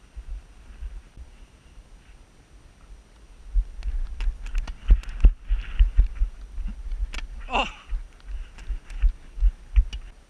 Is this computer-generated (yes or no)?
no